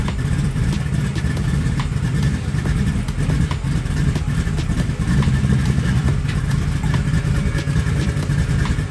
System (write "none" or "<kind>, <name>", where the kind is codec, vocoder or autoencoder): none